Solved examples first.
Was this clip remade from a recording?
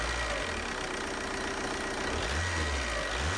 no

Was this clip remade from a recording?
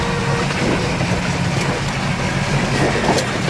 no